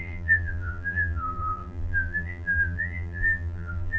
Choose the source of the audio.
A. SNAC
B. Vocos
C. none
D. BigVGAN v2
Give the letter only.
D